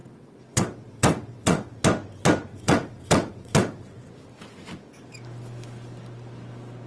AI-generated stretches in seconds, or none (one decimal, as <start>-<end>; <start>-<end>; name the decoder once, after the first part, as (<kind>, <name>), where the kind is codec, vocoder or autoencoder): 0.0-1.8 (vocoder, WaveNeXt); 2.5-4.1